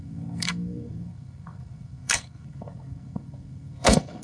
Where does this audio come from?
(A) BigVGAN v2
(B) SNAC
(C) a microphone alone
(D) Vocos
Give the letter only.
B